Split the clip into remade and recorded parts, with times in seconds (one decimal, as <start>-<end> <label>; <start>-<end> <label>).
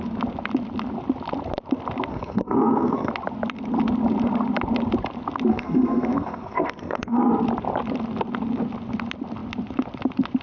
0.0-2.1 recorded; 2.1-3.1 remade; 3.1-5.5 recorded; 5.5-7.3 remade; 7.3-10.4 recorded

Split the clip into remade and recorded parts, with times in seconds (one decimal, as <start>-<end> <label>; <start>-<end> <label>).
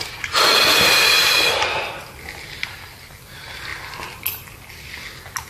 0.0-5.5 recorded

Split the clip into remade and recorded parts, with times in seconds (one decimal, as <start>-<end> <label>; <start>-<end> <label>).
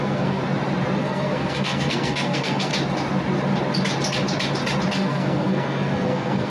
0.0-0.4 remade; 0.4-1.0 recorded; 1.0-2.7 remade; 2.7-4.9 recorded; 4.9-6.5 remade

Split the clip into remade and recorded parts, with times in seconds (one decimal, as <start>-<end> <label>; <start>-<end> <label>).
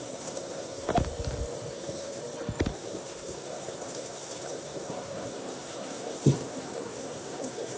0.0-0.9 remade; 0.9-1.7 recorded; 1.7-2.2 remade; 2.2-2.7 recorded; 2.7-7.8 remade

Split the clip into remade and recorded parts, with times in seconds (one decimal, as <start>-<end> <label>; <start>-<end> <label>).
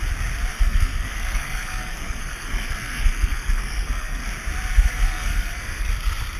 0.0-0.5 recorded; 0.5-4.3 remade; 4.3-4.7 recorded; 4.7-5.9 remade; 5.9-6.4 recorded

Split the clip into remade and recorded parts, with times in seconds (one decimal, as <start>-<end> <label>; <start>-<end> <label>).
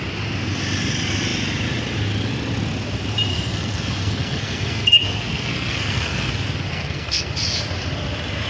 0.0-3.3 recorded; 3.3-6.3 remade; 6.3-6.7 recorded; 6.7-7.3 remade; 7.3-8.5 recorded